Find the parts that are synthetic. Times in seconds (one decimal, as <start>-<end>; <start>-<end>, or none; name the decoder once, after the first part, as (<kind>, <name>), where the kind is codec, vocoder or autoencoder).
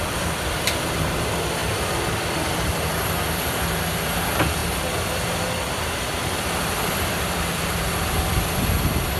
0.0-9.2 (vocoder, BigVGAN v2)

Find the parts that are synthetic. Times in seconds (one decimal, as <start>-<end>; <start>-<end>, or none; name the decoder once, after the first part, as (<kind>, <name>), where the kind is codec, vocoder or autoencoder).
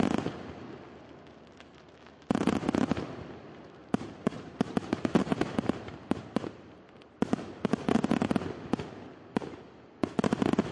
3.8-6.8 (vocoder, BigVGAN v2)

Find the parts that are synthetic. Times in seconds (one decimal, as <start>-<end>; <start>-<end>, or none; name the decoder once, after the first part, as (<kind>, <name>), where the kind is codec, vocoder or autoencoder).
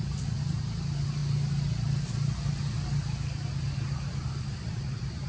none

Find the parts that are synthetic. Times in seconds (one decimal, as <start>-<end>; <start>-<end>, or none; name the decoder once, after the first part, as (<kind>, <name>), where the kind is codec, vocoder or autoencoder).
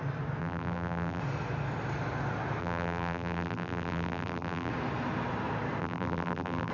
0.4-1.2 (vocoder, BigVGAN v2); 2.6-4.7; 5.8-6.7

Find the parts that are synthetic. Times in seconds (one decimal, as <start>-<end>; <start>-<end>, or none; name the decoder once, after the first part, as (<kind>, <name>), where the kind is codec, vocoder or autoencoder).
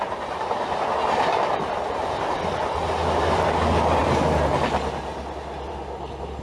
none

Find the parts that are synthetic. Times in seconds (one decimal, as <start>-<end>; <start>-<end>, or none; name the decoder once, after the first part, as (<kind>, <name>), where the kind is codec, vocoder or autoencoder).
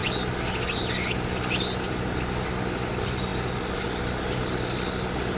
none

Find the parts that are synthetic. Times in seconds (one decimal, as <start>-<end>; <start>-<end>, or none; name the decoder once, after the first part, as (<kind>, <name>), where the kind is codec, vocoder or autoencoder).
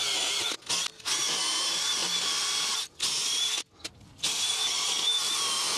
2.0-5.8 (vocoder, BigVGAN v2)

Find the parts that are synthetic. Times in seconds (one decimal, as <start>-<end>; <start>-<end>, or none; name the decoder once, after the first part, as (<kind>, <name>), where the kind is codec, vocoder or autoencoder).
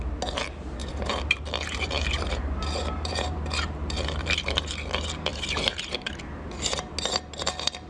0.8-4.7 (vocoder, BigVGAN v2); 5.3-6.2